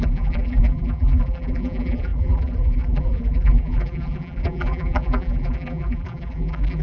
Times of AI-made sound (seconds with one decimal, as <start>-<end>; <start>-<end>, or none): 0.0-6.8